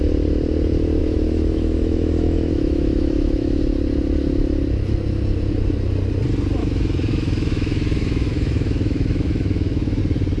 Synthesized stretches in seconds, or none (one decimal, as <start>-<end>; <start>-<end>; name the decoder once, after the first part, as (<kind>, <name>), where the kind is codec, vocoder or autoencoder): 1.0-3.6 (autoencoder, DAC-VAE); 6.6-10.0